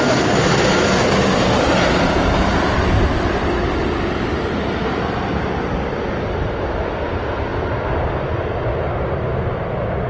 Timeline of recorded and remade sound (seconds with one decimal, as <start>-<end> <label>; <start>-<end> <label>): 0.0-10.1 recorded